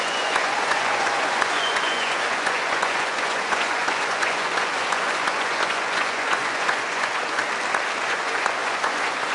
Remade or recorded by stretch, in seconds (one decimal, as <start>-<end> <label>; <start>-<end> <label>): 0.0-7.4 remade; 7.4-8.0 recorded; 8.0-9.3 remade